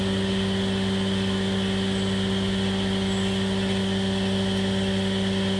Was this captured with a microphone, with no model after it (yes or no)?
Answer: yes